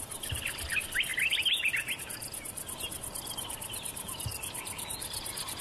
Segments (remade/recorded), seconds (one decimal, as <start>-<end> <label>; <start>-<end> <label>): 0.0-1.1 remade; 1.1-2.0 recorded; 2.0-5.6 remade